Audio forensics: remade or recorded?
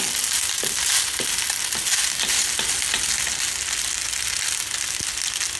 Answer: recorded